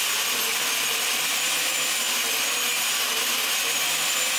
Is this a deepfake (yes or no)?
no